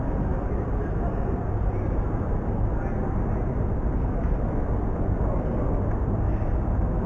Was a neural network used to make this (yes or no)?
no